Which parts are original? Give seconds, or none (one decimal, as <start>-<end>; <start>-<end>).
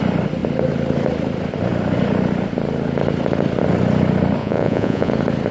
0.0-4.4; 5.1-5.5